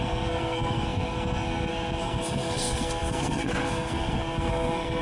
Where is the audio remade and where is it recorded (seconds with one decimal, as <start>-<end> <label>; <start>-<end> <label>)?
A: 0.0-5.0 remade